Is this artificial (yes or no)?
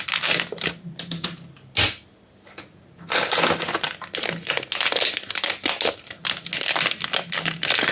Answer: no